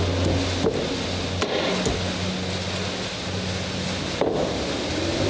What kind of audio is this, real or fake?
real